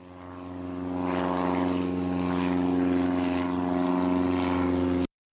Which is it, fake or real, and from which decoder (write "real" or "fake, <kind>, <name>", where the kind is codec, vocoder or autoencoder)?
real